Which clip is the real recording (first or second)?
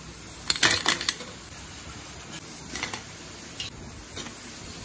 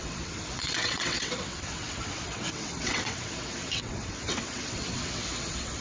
first